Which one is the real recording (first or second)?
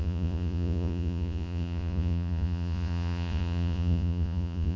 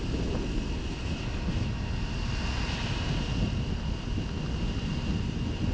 second